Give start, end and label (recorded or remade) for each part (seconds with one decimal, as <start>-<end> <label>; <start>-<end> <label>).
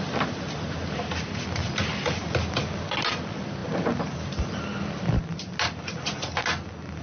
0.0-7.0 recorded